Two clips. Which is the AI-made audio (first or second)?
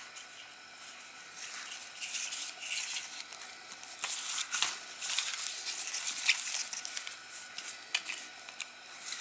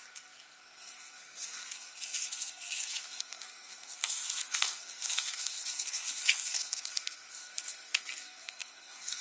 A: second